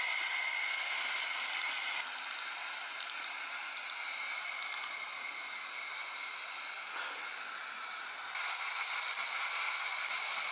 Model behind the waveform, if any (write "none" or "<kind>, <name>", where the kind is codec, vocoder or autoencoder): none